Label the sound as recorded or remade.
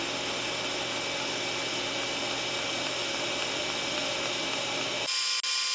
recorded